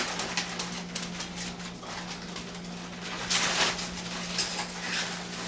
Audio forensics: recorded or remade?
recorded